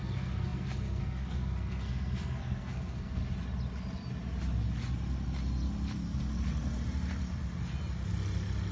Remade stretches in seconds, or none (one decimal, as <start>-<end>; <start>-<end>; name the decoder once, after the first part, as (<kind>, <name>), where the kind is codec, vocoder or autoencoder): 0.0-3.2 (codec, SNAC)